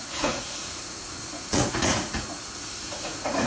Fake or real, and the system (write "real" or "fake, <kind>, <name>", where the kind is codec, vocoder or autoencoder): fake, vocoder, Vocos